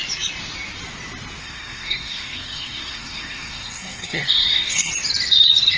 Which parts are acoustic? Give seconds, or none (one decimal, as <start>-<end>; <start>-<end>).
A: 0.0-1.4; 4.9-5.8